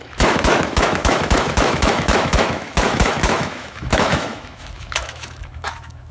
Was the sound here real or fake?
fake